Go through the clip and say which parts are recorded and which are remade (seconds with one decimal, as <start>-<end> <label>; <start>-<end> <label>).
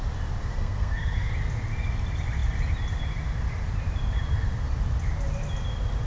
0.0-0.4 recorded; 0.4-1.3 remade; 1.3-6.1 recorded